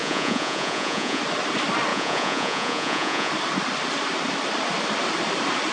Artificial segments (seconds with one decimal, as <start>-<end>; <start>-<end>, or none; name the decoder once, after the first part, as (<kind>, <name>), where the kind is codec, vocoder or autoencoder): 0.0-1.2 (vocoder, Vocos); 1.9-3.3